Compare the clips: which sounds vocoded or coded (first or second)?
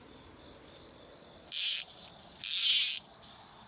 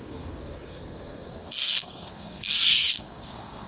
second